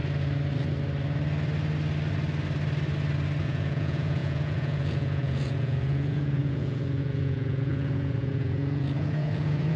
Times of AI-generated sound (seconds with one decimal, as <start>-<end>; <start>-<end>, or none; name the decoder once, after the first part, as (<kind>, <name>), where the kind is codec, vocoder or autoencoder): 3.4-9.8 (vocoder, Vocos)